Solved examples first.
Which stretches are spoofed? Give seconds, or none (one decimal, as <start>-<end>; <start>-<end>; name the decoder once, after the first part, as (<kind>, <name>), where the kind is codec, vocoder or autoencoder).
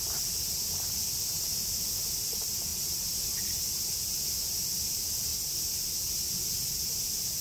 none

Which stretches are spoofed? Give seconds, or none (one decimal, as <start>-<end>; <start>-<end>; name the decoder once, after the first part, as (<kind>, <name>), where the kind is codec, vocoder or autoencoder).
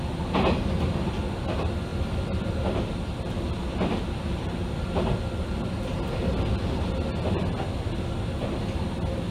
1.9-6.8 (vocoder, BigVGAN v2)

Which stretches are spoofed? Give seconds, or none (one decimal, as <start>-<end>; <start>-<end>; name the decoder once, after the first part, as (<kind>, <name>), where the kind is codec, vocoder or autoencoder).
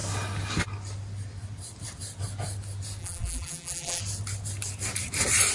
3.0-4.0 (vocoder, BigVGAN v2)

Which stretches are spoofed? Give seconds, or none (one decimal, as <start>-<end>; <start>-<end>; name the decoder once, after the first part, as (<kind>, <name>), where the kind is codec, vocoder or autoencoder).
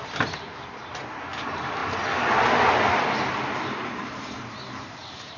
0.0-1.8 (vocoder, BigVGAN v2); 3.2-5.4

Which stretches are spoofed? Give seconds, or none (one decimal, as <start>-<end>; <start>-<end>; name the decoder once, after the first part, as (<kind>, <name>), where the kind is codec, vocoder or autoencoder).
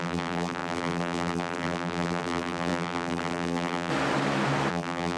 0.0-3.9 (vocoder, BigVGAN v2); 4.7-5.2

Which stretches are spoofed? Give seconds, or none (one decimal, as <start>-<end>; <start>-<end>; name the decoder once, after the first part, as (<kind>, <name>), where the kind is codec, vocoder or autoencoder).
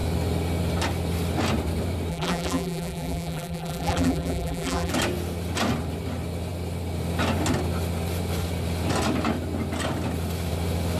2.1-4.9 (vocoder, BigVGAN v2)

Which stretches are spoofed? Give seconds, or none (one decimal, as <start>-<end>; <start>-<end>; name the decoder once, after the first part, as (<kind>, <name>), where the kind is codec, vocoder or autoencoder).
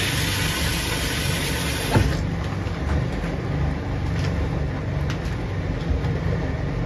0.7-1.3 (vocoder, BigVGAN v2)